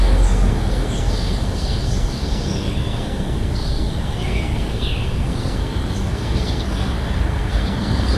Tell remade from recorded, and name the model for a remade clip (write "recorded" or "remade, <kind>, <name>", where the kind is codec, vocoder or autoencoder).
remade, codec, SNAC